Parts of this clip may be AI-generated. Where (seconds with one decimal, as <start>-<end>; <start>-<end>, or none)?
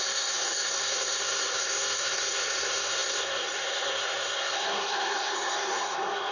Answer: 0.0-6.3